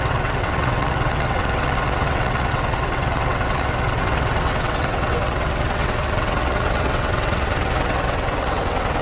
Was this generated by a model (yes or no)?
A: yes